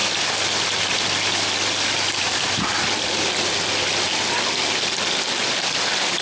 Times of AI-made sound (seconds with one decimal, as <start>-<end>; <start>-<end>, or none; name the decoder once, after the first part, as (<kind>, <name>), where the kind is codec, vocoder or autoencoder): none